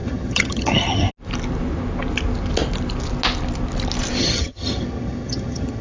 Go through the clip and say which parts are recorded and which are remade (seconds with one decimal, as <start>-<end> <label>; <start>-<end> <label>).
0.0-1.1 remade; 1.1-4.2 recorded; 4.2-5.8 remade